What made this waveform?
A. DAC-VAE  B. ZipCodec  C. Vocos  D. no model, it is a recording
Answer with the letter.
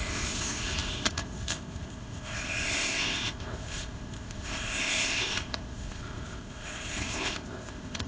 B